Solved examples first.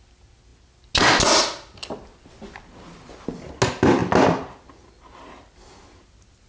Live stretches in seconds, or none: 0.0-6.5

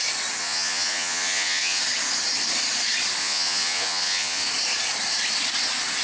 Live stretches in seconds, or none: 0.0-0.4; 1.8-3.2; 4.5-6.0

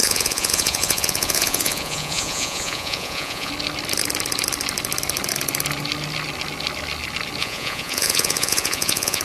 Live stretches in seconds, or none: 3.5-7.4

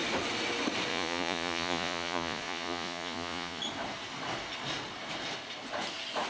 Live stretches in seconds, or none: 0.0-0.9; 3.6-6.3